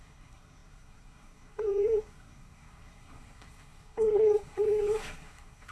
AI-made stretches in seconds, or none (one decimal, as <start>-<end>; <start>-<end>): 0.0-5.7